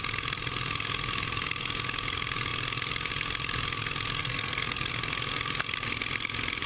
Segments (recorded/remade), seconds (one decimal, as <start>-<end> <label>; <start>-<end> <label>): 0.0-4.2 recorded; 4.2-4.9 remade; 4.9-6.7 recorded